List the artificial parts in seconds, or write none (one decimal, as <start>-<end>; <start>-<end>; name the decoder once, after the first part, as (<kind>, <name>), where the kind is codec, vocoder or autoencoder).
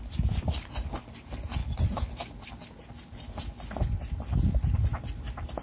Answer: none